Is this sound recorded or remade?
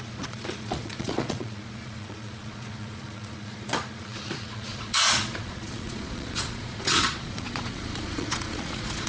remade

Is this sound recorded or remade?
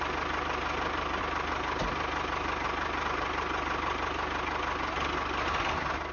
recorded